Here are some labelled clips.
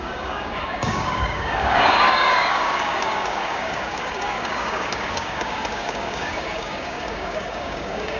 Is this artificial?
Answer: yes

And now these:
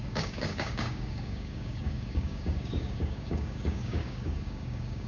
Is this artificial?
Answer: yes